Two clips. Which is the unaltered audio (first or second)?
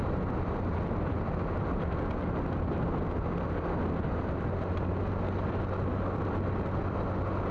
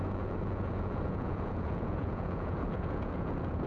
first